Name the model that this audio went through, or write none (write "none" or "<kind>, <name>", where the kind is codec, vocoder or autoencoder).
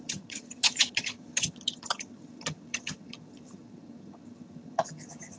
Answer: vocoder, HiFi-GAN